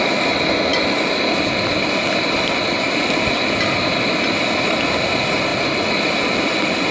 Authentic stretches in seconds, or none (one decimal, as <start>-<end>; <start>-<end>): 0.0-6.9